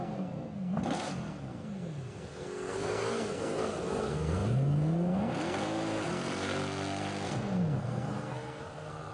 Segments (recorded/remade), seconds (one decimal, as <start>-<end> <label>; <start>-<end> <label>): 0.0-9.1 remade